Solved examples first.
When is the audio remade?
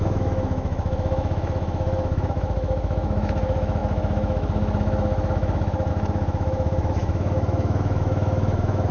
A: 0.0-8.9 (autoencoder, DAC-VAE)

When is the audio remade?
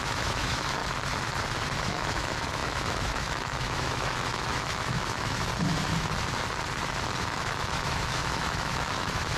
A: 0.0-0.8 (autoencoder, DAC-VAE); 1.8-5.5; 7.2-9.4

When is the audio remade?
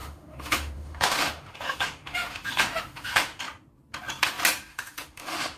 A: 0.0-3.4 (autoencoder, DAC-VAE); 4.7-5.6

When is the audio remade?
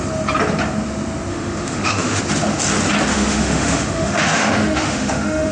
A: 1.3-2.2 (autoencoder, DAC-VAE); 3.1-5.5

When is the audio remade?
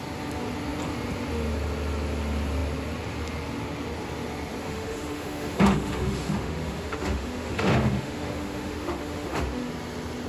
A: 4.6-9.7 (autoencoder, DAC-VAE)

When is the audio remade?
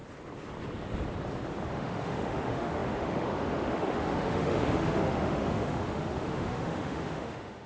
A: 1.7-7.7 (autoencoder, DAC-VAE)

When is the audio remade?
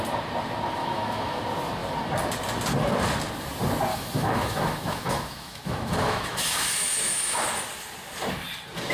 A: 0.8-1.4 (autoencoder, DAC-VAE); 3.9-7.4